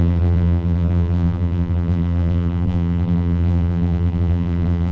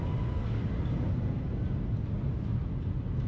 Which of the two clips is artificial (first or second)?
first